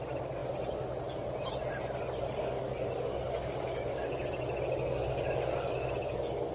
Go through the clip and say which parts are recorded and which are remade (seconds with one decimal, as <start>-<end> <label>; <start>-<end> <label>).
0.0-2.4 recorded; 2.4-6.5 remade